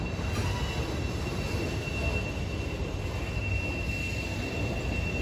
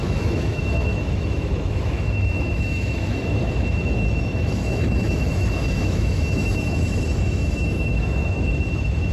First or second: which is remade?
second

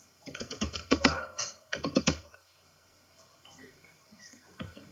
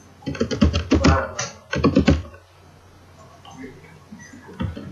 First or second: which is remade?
first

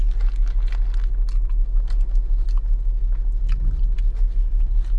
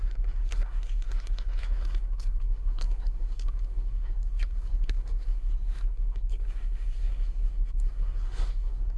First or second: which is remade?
second